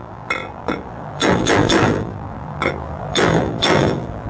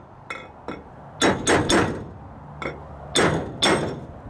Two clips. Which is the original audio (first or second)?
second